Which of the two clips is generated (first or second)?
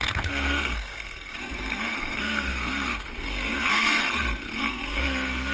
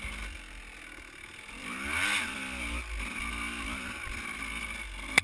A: first